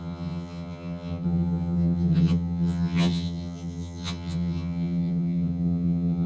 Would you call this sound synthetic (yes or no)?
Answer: yes